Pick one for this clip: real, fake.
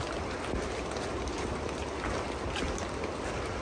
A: real